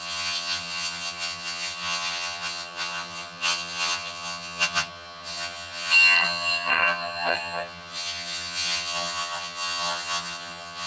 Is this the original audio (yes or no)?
no